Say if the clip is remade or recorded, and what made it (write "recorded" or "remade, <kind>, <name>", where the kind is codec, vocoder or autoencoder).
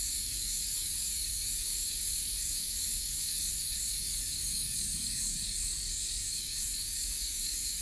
remade, codec, DAC